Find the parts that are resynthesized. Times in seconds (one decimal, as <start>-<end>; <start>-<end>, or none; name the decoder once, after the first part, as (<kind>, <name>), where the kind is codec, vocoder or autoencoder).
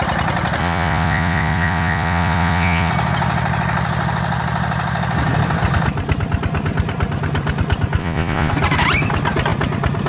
0.6-2.9 (vocoder, Vocos); 8.0-8.5